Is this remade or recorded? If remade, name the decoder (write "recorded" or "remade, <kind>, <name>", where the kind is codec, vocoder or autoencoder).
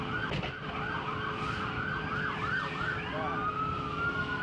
recorded